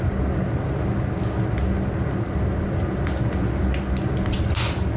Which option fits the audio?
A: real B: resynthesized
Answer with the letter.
A